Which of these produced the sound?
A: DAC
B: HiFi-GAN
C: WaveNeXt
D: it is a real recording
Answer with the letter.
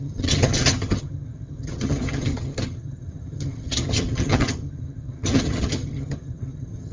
B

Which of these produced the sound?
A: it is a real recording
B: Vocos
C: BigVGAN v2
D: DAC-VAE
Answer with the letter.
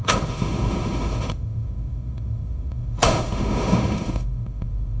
D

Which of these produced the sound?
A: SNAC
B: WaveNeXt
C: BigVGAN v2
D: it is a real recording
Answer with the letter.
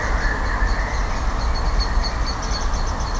D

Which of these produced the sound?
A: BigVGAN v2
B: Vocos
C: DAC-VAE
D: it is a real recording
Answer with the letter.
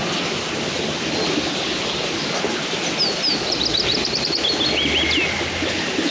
D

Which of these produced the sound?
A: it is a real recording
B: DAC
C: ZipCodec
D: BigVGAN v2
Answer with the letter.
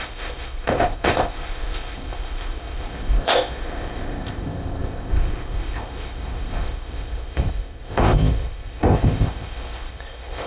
C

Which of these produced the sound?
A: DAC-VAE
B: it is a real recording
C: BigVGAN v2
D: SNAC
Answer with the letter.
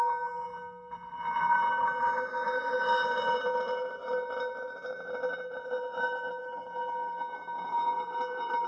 B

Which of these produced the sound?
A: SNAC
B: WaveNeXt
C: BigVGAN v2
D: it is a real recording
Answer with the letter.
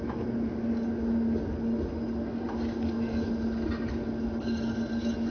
D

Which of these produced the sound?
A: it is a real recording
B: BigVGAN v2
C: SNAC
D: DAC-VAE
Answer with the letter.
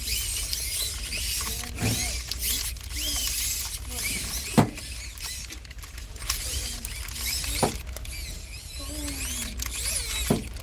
A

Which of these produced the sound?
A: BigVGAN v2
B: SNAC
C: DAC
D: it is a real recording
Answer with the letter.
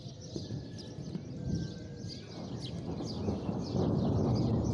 D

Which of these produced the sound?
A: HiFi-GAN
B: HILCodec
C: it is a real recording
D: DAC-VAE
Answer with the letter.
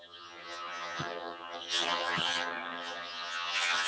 A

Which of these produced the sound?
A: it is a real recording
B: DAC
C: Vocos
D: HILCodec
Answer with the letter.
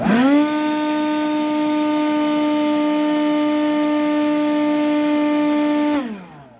A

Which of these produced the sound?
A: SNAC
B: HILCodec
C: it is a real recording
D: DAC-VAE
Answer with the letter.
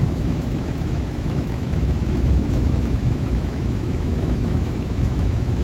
D